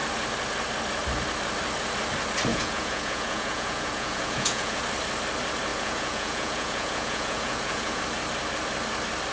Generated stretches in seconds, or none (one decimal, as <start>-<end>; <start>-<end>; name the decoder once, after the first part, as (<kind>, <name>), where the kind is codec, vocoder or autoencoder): 2.5-4.8 (vocoder, Vocos); 5.7-8.0